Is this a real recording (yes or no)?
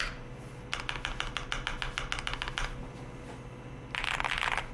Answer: yes